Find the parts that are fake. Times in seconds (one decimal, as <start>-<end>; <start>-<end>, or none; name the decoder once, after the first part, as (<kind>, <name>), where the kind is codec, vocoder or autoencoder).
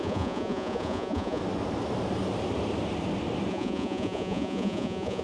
0.0-1.4 (vocoder, Vocos); 3.5-5.2